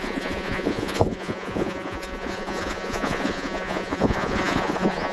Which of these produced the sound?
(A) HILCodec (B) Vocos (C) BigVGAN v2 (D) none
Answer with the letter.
B